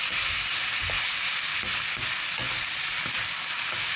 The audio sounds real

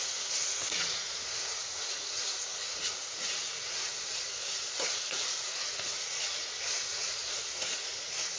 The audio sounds fake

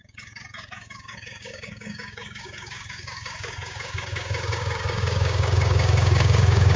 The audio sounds fake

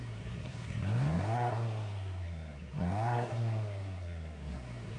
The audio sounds fake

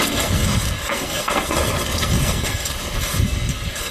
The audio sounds fake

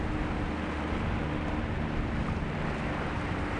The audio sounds real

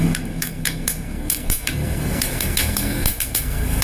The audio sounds fake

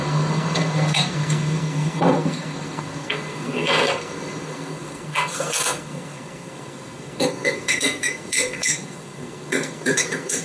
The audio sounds fake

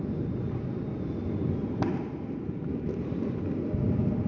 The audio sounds real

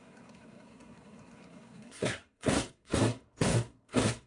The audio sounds fake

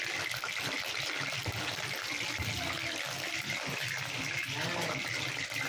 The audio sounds real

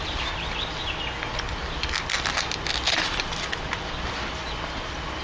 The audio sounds real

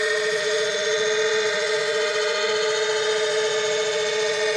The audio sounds fake